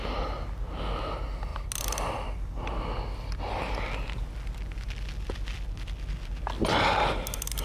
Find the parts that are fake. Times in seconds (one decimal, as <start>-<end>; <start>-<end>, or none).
none